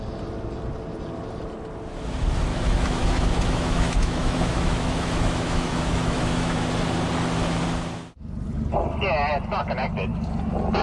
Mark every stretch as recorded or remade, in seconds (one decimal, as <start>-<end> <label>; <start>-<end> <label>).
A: 0.0-2.5 recorded; 2.5-6.7 remade; 6.7-10.8 recorded